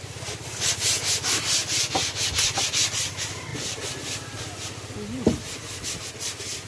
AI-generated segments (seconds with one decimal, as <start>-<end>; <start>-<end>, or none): none